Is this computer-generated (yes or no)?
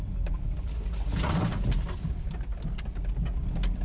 no